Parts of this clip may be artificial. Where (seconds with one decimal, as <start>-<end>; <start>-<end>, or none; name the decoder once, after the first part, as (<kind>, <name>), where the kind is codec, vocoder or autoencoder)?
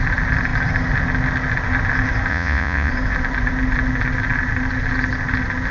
2.3-2.9 (vocoder, Vocos)